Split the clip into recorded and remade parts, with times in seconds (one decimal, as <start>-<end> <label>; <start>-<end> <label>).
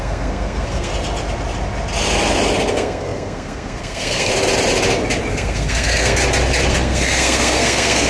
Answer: 0.0-0.9 remade; 0.9-2.7 recorded; 2.7-4.3 remade; 4.3-5.3 recorded; 5.3-6.2 remade; 6.2-6.7 recorded; 6.7-8.1 remade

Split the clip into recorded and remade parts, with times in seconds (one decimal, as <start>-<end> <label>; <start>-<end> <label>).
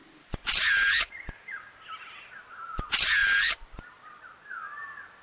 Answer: 0.0-0.7 remade; 0.7-3.2 recorded; 3.2-4.2 remade; 4.2-5.2 recorded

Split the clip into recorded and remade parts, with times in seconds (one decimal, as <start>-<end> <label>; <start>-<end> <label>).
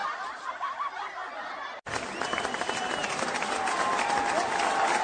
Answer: 0.0-0.5 remade; 0.5-5.0 recorded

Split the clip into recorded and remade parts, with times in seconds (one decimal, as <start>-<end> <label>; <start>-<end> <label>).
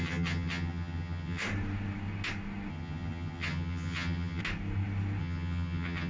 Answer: 0.0-1.4 remade; 1.4-2.7 recorded; 2.7-4.4 remade; 4.4-5.2 recorded; 5.2-6.1 remade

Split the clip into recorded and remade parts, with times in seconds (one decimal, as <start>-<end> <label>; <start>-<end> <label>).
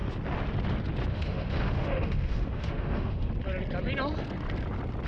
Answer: 0.0-1.1 recorded; 1.1-3.3 remade; 3.3-5.1 recorded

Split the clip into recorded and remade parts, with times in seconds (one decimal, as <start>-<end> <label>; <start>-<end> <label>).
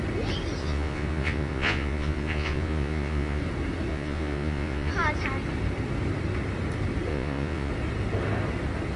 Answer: 0.0-0.6 recorded; 0.6-3.4 remade; 3.4-3.9 recorded; 3.9-4.9 remade; 4.9-7.1 recorded; 7.1-7.7 remade; 7.7-9.0 recorded